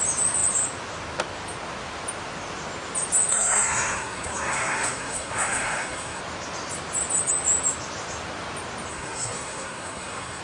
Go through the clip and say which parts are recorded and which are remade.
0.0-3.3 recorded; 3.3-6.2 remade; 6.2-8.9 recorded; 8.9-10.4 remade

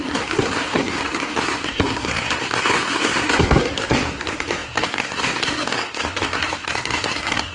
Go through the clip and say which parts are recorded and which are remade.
0.0-7.5 remade

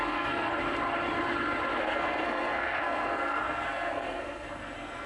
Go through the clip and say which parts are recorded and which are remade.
0.0-0.5 remade; 0.5-1.8 recorded; 1.8-5.1 remade